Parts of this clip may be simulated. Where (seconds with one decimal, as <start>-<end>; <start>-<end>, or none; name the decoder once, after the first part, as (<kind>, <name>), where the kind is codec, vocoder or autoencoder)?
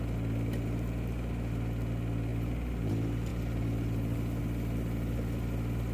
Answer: none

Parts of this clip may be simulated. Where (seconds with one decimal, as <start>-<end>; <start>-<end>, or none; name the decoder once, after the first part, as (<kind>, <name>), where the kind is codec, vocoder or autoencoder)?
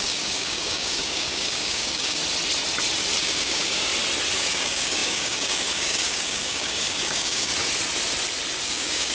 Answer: 0.0-2.2 (codec, DAC); 3.2-3.9; 4.4-7.5; 8.6-9.1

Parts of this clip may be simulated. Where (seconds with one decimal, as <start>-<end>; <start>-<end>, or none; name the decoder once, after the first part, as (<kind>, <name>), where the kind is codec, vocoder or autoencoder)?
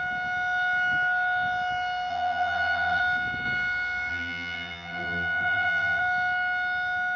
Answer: 2.1-3.0 (vocoder, BigVGAN v2); 4.1-6.0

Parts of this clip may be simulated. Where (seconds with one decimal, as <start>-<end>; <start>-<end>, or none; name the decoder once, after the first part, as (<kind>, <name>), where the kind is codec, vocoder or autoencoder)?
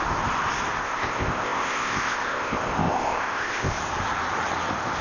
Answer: 0.8-3.8 (codec, ZipCodec)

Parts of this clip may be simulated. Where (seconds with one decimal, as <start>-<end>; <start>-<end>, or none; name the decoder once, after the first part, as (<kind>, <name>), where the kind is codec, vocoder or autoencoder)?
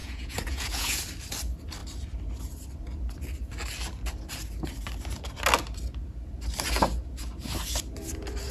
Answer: 0.0-1.0 (vocoder, Vocos)